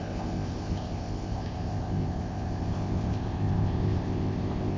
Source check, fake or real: fake